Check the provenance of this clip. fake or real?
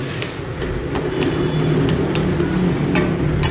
real